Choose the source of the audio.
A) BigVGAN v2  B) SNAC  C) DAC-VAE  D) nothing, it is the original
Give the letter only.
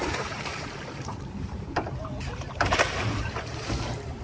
A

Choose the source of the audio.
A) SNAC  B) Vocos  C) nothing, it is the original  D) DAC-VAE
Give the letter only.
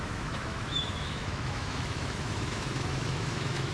D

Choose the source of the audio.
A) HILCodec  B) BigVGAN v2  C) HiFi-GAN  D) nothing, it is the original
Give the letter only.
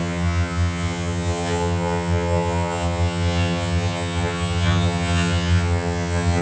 C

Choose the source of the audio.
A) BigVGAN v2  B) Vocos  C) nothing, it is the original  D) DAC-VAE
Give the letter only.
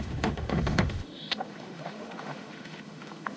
D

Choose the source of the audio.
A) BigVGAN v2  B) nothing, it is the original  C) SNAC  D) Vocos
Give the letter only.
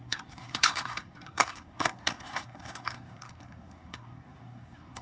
C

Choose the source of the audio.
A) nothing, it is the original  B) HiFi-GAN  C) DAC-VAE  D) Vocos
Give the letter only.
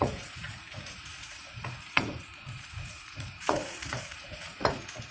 D